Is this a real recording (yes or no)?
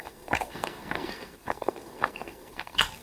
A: no